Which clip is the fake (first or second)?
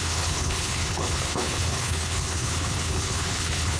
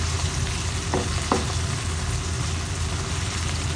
first